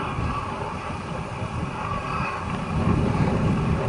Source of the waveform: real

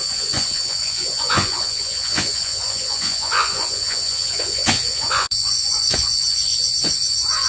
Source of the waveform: fake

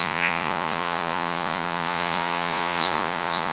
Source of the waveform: fake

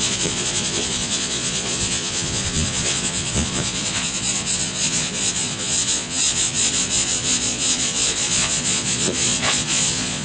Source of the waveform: fake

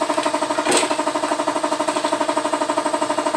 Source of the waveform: real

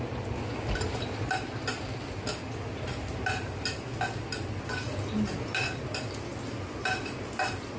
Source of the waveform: real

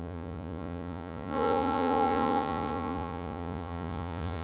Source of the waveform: fake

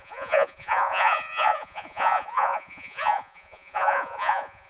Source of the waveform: fake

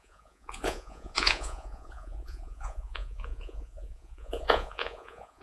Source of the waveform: fake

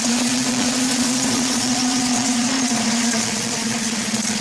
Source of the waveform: fake